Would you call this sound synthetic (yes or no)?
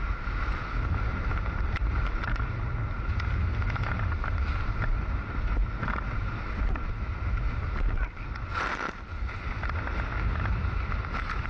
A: no